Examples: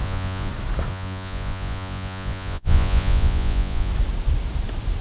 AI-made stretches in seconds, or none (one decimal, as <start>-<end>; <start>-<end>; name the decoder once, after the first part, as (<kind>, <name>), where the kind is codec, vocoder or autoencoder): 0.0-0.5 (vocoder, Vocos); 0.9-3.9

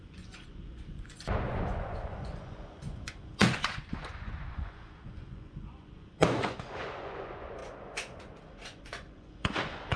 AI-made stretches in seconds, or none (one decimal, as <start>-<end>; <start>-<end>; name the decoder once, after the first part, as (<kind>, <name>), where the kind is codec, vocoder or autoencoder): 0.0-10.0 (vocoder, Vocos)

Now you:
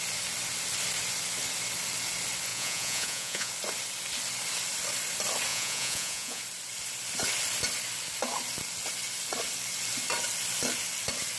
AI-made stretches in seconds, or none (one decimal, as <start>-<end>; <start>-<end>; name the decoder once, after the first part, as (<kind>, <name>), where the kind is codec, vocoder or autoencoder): 2.5-3.5 (vocoder, Vocos); 5.5-6.4